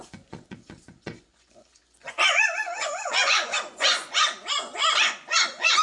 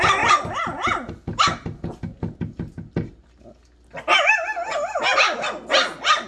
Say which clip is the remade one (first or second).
first